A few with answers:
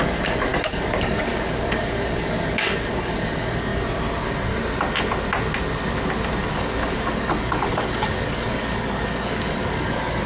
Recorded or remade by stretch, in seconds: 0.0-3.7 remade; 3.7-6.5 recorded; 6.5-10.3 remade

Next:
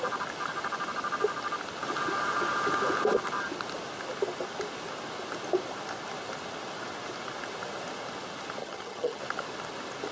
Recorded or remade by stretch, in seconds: 0.0-8.6 recorded; 8.6-9.2 remade; 9.2-10.1 recorded